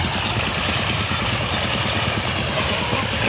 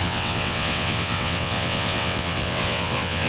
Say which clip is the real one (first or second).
first